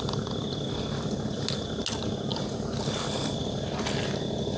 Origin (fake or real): real